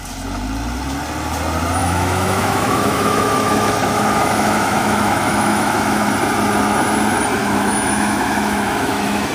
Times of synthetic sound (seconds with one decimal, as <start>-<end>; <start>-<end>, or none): 1.8-6.1; 7.4-9.3